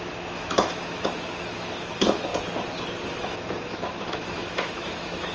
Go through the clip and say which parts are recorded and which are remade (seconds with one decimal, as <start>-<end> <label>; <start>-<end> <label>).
0.0-2.3 remade; 2.3-3.1 recorded; 3.1-5.3 remade